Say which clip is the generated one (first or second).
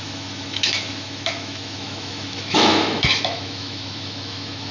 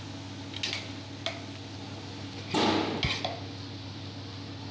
first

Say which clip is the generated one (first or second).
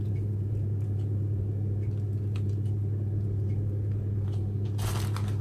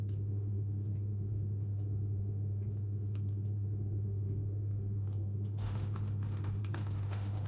second